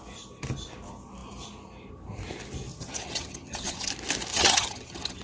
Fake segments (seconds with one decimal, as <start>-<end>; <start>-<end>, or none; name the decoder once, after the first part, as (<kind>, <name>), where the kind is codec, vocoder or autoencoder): 2.7-3.9 (vocoder, HiFi-GAN); 4.3-5.2